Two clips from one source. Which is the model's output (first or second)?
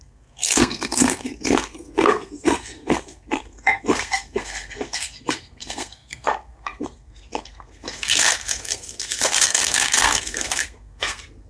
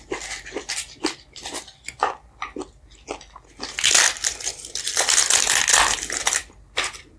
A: first